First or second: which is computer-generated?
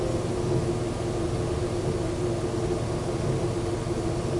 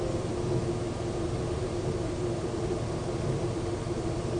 second